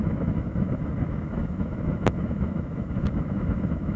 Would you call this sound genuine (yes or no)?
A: no